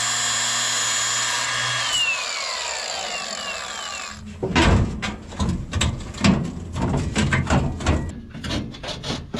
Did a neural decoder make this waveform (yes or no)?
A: no